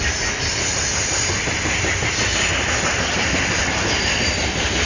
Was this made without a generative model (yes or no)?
yes